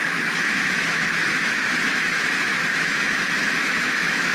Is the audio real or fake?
fake